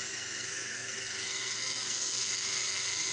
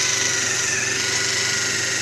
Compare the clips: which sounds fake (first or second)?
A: first